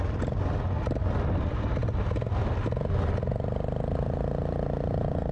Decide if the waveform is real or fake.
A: real